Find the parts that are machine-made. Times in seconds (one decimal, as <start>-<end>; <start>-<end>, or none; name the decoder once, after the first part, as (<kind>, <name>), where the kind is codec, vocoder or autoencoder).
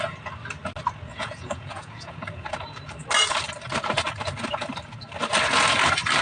1.1-2.5 (vocoder, Vocos)